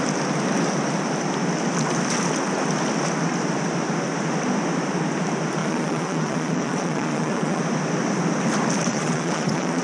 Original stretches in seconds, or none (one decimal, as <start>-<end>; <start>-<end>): 0.0-5.6; 7.6-8.9